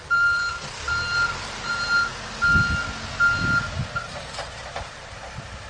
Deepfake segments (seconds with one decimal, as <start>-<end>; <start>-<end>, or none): 0.0-2.1; 3.7-5.7